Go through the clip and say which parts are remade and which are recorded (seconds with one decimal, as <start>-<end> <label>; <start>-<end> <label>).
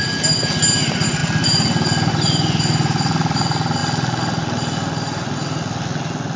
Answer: 0.0-6.4 recorded